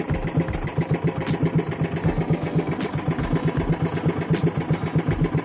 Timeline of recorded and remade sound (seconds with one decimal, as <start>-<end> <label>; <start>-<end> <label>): 0.0-5.4 recorded